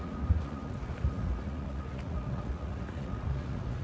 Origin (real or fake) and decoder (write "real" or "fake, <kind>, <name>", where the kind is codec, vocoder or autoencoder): fake, vocoder, Vocos